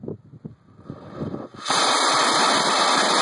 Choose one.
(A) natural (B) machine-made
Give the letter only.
A